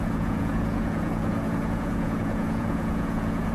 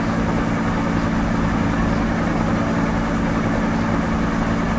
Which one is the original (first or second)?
second